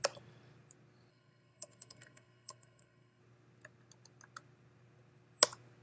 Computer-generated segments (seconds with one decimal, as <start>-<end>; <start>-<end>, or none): 1.1-3.2